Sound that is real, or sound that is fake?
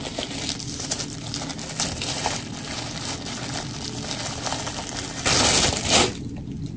real